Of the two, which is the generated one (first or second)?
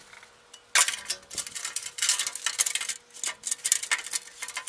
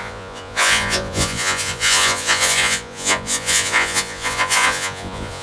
second